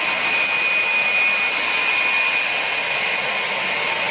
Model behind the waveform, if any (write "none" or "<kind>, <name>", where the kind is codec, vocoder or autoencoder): none